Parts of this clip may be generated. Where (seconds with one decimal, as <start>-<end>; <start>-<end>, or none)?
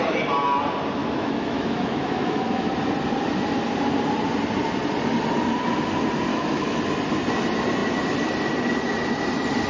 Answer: 1.0-2.7; 6.3-6.8